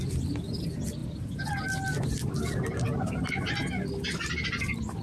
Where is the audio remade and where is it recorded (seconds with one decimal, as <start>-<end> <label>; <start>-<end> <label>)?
0.0-5.0 recorded